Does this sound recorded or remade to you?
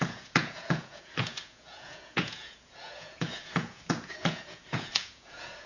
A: remade